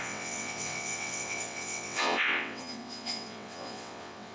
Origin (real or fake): fake